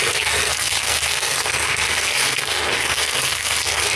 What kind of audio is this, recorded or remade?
remade